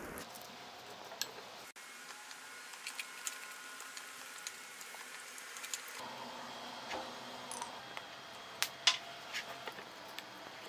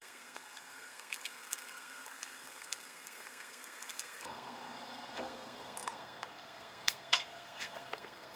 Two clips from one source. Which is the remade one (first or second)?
second